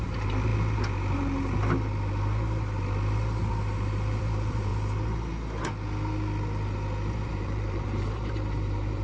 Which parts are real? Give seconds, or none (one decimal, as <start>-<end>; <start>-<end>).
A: 0.5-4.2; 4.7-7.1